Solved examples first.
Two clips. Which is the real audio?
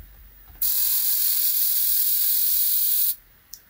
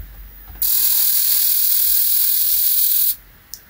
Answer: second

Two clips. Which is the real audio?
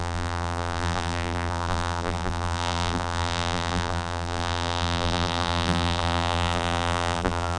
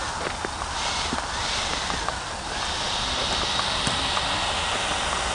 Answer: second